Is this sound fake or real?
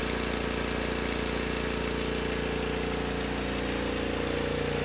real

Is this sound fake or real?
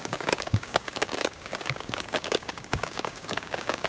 fake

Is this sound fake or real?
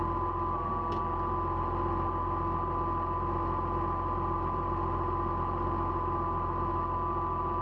real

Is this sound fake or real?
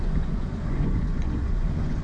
fake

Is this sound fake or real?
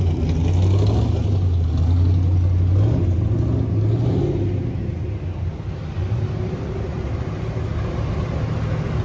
real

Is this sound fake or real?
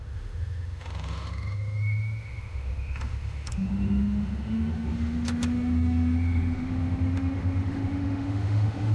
fake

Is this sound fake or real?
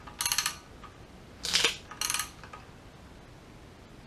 real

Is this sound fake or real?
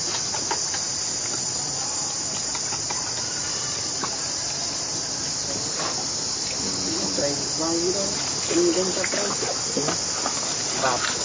real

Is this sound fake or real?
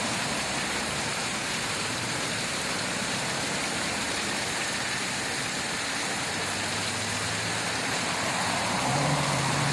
fake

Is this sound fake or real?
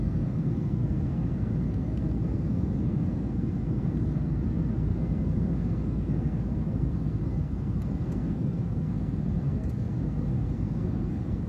fake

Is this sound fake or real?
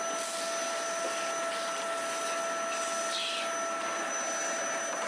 real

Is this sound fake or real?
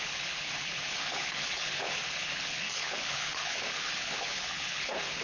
fake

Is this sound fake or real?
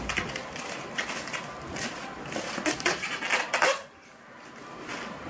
real